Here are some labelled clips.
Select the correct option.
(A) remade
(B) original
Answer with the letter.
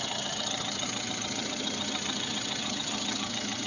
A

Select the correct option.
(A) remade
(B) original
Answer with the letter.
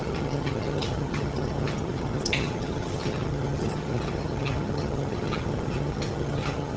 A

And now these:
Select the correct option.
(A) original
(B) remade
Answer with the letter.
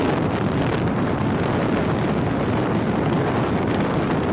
A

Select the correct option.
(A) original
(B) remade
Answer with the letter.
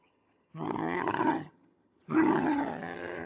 B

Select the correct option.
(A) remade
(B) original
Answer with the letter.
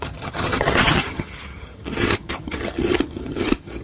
A